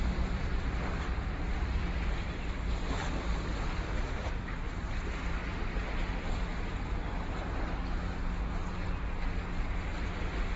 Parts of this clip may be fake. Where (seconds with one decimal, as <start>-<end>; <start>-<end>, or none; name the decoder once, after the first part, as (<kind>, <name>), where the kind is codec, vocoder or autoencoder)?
0.0-5.4 (vocoder, BigVGAN v2); 10.1-10.6